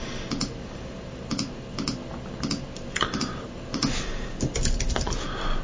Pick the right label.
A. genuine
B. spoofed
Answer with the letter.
A